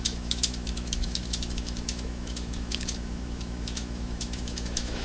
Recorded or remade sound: remade